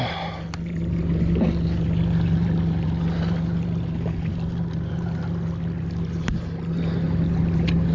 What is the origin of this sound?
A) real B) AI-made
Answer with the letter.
A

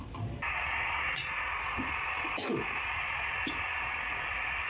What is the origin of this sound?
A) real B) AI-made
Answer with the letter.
A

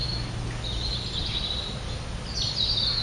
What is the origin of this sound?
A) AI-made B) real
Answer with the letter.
B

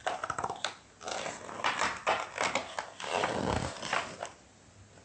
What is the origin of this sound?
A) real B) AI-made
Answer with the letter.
A